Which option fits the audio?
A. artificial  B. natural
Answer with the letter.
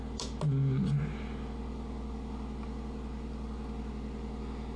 B